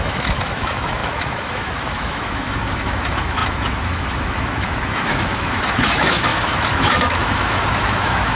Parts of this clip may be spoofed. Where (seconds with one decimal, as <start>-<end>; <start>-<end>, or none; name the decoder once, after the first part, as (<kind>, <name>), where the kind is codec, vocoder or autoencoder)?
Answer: 0.0-8.3 (autoencoder, DAC-VAE)